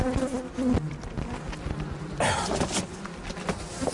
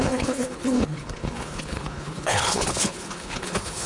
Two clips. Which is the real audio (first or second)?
first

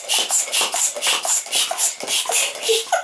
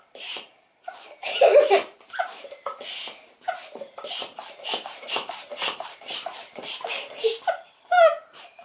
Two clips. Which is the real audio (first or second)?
first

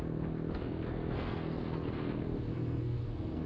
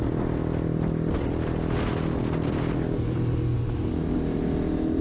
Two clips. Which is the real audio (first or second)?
second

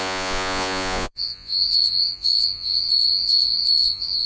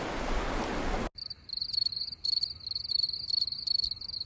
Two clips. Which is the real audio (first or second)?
second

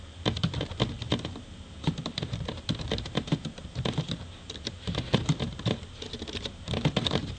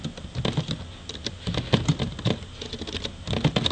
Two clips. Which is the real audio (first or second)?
second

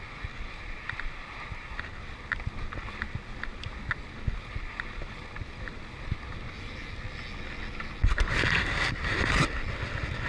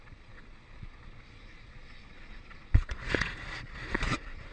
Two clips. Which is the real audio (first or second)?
first